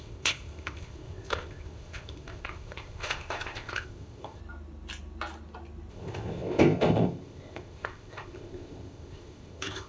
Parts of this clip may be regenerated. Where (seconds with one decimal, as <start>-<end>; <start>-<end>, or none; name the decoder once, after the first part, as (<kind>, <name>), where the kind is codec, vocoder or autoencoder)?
0.0-4.4 (codec, ZipCodec); 5.9-9.9